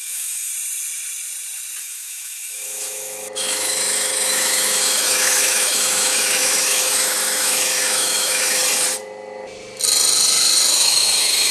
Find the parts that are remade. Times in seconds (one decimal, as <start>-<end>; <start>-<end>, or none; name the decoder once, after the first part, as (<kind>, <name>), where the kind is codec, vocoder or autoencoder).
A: 0.0-0.5 (autoencoder, DAC-VAE); 1.8-8.6; 10.7-11.5